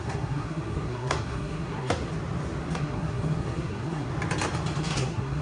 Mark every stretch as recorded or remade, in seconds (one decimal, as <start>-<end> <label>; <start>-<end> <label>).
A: 0.0-2.1 remade; 2.1-2.6 recorded; 2.6-4.1 remade; 4.1-4.8 recorded; 4.8-5.4 remade